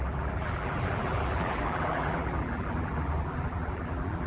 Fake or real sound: fake